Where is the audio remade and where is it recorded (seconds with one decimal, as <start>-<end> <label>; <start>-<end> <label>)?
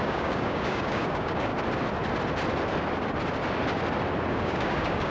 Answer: 0.0-1.5 remade; 1.5-4.3 recorded; 4.3-5.1 remade